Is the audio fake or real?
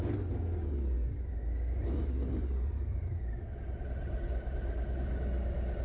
real